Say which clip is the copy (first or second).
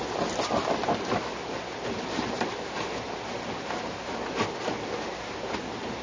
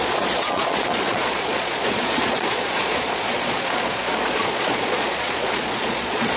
second